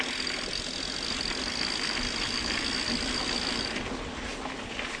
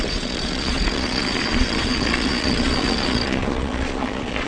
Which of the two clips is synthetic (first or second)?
second